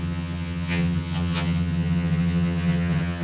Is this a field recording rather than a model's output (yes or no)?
no